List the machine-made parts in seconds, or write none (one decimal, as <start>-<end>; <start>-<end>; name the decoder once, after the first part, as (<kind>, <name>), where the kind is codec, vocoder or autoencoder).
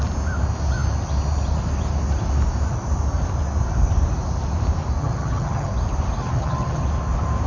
5.0-5.7 (vocoder, HiFi-GAN); 6.2-6.8